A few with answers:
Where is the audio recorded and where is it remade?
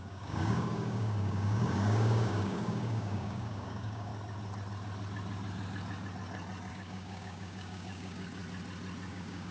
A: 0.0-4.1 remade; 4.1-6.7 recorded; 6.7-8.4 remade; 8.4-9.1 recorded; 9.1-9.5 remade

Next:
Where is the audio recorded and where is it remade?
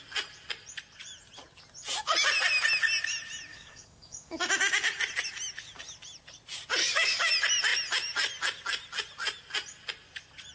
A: 0.0-3.5 recorded; 3.5-4.4 remade; 4.4-6.8 recorded; 6.8-7.3 remade; 7.3-10.5 recorded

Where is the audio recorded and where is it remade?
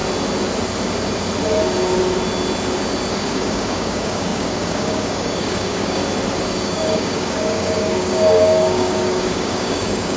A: 0.0-3.1 recorded; 3.1-6.0 remade; 6.0-6.6 recorded; 6.6-10.2 remade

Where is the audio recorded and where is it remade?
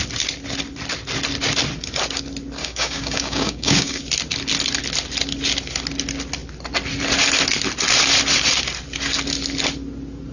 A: 0.0-2.6 recorded; 2.6-4.0 remade; 4.0-10.3 recorded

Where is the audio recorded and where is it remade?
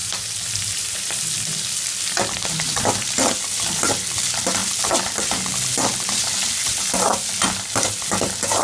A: 0.0-8.6 recorded